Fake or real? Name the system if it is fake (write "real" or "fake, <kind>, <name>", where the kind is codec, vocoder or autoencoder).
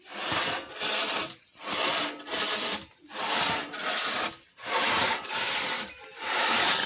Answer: fake, vocoder, BigVGAN v2